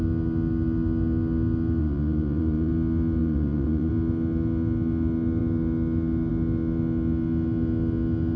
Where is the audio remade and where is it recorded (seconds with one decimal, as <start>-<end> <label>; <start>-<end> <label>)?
0.0-1.8 recorded; 1.8-2.7 remade; 2.7-3.2 recorded; 3.2-3.9 remade; 3.9-8.4 recorded